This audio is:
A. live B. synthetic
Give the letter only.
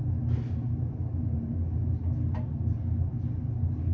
A